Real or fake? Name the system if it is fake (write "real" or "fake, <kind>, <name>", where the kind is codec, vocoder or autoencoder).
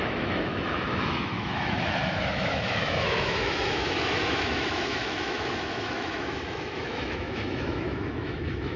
fake, autoencoder, DAC-VAE